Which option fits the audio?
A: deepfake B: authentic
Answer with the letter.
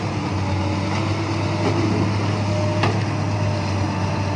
B